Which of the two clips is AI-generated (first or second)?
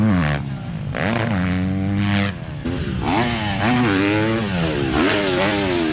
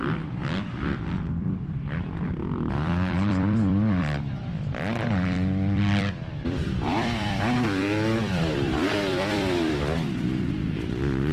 second